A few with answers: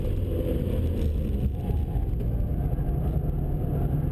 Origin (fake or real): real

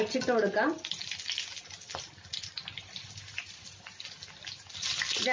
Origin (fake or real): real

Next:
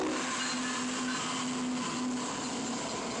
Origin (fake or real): real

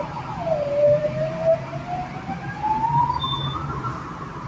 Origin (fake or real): fake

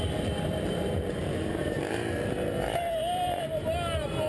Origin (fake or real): fake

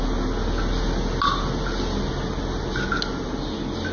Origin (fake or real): real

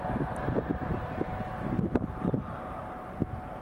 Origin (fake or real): fake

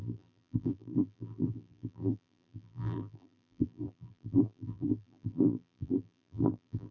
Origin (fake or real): fake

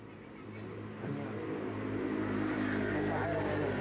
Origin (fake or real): real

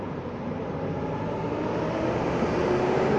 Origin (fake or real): fake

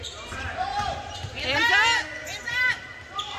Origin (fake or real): fake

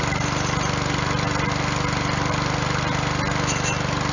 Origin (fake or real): real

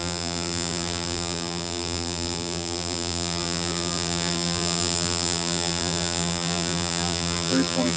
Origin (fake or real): fake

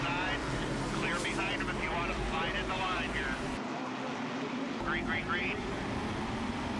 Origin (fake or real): fake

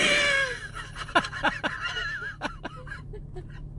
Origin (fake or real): real